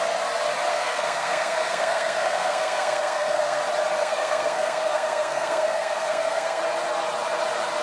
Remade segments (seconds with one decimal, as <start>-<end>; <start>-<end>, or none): 0.7-3.6; 4.0-6.6